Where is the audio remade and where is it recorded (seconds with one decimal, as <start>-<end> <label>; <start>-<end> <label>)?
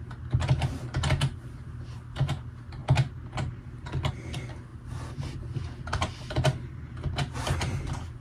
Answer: 0.0-8.2 recorded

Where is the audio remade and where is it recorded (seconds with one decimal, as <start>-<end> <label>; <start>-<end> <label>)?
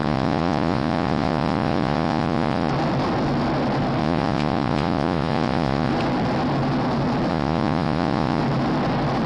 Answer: 0.0-2.7 remade; 2.7-4.0 recorded; 4.0-5.9 remade; 5.9-7.3 recorded; 7.3-8.4 remade; 8.4-9.3 recorded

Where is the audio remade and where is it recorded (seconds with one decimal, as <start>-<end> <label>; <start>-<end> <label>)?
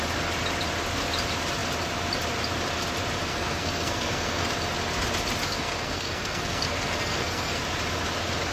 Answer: 0.0-3.3 recorded; 3.3-4.5 remade; 4.5-5.4 recorded; 5.4-7.6 remade; 7.6-8.5 recorded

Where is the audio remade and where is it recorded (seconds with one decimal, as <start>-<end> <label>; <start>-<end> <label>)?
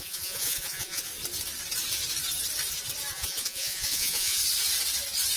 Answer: 0.0-1.1 remade; 1.1-3.1 recorded; 3.1-4.4 remade; 4.4-5.4 recorded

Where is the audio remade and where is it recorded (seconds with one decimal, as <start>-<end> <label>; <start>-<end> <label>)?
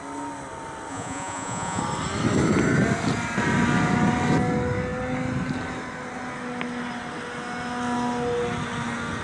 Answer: 0.0-0.9 recorded; 0.9-1.8 remade; 1.8-9.2 recorded